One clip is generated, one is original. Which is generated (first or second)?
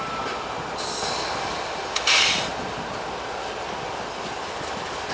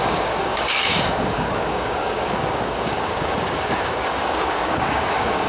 second